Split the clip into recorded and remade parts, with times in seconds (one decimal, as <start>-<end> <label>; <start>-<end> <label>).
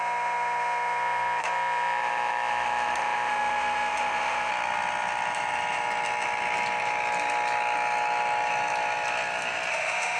0.0-4.5 remade; 4.5-9.7 recorded; 9.7-10.2 remade